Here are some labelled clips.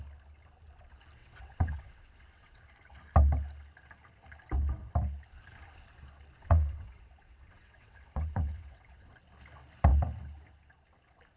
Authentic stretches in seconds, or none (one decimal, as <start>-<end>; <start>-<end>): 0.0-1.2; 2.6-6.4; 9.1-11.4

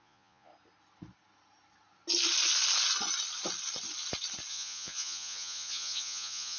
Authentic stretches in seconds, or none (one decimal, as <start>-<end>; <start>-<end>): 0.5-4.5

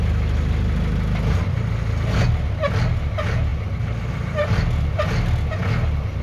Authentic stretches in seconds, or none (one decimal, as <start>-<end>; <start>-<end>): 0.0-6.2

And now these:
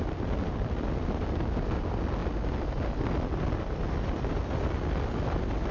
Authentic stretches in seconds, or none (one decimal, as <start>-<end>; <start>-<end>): 0.0-5.7